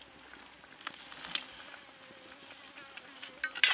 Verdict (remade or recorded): recorded